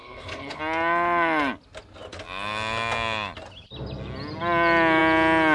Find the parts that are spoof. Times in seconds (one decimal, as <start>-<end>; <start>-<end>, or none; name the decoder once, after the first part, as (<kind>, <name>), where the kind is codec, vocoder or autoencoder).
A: 0.0-0.6 (codec, HILCodec)